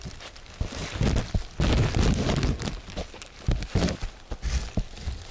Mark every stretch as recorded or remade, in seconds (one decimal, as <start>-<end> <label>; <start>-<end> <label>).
0.0-5.3 recorded